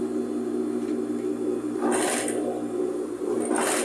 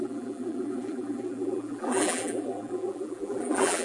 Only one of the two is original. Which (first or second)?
first